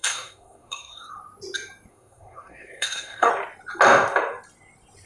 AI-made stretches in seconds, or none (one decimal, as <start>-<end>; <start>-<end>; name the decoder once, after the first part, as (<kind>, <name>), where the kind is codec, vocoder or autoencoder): 0.0-1.1 (codec, SNAC); 1.9-3.3